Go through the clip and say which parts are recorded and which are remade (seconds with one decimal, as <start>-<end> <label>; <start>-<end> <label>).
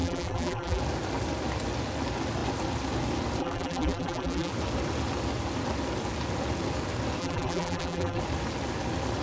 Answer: 0.0-0.8 remade; 0.8-3.4 recorded; 3.4-4.5 remade; 4.5-7.2 recorded; 7.2-8.2 remade; 8.2-9.2 recorded